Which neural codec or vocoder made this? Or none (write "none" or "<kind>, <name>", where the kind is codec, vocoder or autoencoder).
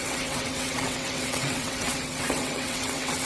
vocoder, WaveNeXt